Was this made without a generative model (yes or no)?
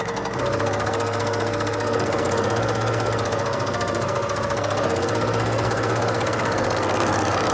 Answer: no